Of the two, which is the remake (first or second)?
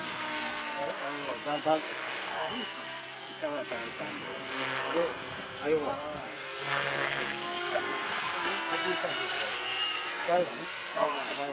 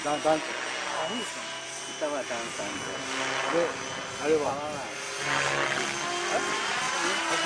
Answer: first